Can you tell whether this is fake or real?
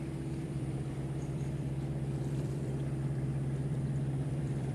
fake